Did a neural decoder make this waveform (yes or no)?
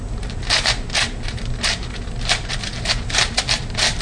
yes